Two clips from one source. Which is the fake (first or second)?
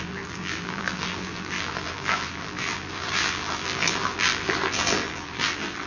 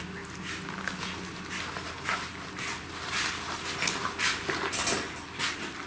first